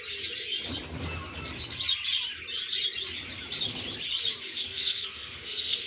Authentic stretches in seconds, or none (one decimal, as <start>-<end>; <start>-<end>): 0.0-4.7